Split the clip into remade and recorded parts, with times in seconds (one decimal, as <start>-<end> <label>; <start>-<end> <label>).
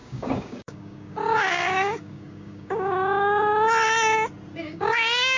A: 0.0-3.5 remade; 3.5-4.6 recorded; 4.6-5.4 remade